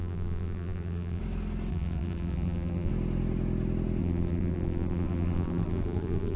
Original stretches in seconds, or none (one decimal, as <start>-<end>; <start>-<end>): 1.2-1.7; 2.9-4.0